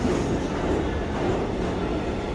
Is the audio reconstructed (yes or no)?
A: no